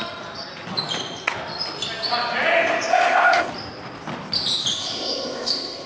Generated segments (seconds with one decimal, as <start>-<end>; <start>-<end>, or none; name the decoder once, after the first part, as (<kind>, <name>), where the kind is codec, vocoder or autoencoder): 2.9-3.5 (codec, ZipCodec); 4.7-5.9